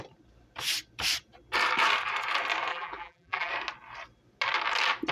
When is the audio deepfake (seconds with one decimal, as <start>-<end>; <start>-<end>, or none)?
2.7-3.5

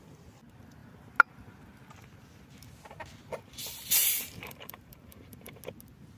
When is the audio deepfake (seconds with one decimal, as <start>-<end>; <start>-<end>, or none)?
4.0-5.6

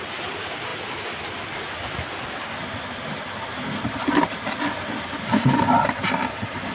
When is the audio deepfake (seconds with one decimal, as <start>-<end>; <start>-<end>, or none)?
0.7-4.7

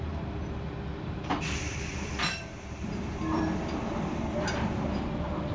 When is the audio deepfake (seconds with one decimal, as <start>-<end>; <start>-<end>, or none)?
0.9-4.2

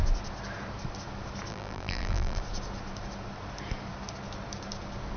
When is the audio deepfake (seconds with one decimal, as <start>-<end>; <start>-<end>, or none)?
1.5-2.4